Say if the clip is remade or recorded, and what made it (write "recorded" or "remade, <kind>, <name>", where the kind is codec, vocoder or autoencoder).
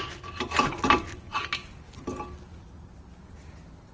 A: recorded